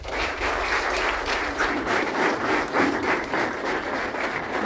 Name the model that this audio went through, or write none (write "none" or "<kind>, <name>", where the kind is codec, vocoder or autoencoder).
vocoder, BigVGAN v2